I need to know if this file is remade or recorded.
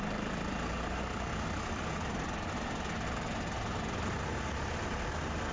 recorded